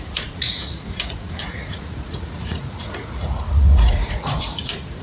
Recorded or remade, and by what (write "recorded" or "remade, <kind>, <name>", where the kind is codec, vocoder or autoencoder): remade, vocoder, Vocos